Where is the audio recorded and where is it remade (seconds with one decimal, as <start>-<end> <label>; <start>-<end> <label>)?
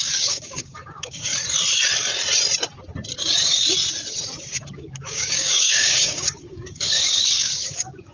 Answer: 0.0-1.3 remade; 1.3-4.7 recorded; 4.7-8.1 remade